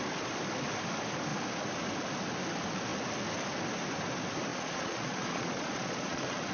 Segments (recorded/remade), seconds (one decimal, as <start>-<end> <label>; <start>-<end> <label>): 0.0-4.5 recorded; 4.5-6.5 remade